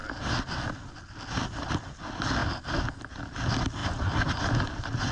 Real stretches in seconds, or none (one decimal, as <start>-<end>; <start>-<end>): 0.0-5.1